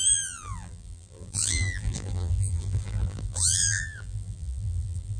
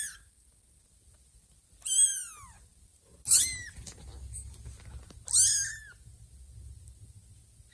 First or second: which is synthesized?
first